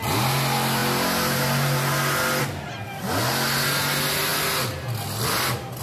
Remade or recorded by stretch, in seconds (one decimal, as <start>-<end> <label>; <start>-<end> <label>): 0.0-5.8 recorded